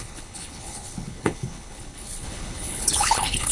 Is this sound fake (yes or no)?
yes